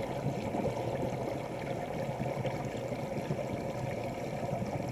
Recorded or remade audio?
recorded